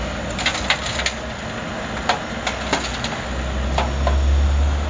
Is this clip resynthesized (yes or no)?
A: no